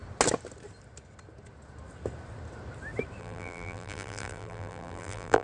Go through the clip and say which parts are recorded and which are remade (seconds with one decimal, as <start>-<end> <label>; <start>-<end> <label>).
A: 0.0-3.2 recorded; 3.2-5.4 remade

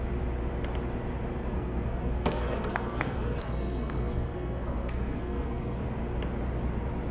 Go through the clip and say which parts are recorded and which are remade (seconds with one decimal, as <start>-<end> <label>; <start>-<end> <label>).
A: 0.0-1.5 recorded; 1.5-5.8 remade; 5.8-7.1 recorded

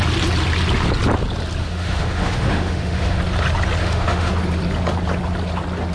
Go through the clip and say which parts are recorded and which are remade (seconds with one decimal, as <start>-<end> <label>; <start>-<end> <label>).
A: 0.0-1.6 recorded; 1.6-3.2 remade; 3.2-3.8 recorded; 3.8-4.3 remade; 4.3-5.9 recorded

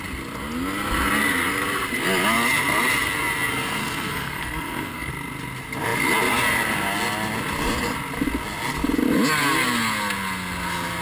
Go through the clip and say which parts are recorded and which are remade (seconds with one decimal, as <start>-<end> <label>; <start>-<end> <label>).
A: 0.0-3.8 recorded; 3.8-5.1 remade; 5.1-11.0 recorded